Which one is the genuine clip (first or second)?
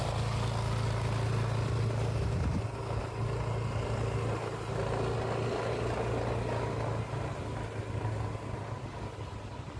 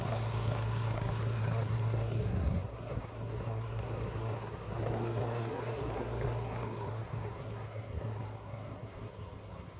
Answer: first